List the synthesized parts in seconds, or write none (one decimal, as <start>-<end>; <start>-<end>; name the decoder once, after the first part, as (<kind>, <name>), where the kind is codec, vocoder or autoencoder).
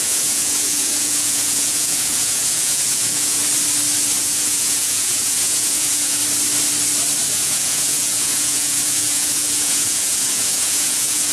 0.0-3.4 (vocoder, Vocos); 4.2-6.2; 7.3-11.3